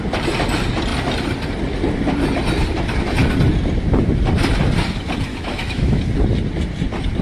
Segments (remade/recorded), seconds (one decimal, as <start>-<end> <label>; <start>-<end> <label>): 0.0-5.3 recorded; 5.3-6.0 remade; 6.0-7.2 recorded